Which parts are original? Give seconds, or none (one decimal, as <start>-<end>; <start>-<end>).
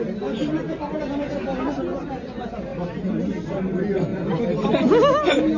0.0-5.6